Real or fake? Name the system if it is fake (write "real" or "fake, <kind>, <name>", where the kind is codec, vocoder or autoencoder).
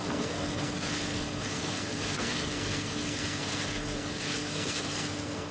fake, codec, SNAC